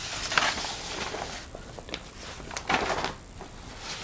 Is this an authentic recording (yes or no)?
yes